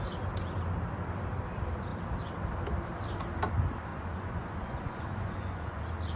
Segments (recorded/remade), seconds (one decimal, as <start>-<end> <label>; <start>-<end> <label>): 0.0-3.9 recorded; 3.9-5.8 remade; 5.8-6.2 recorded